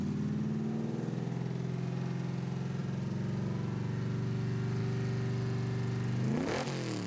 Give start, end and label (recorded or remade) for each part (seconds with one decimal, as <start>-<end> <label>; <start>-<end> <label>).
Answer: 0.0-7.1 recorded